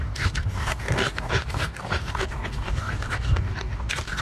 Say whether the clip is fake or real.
fake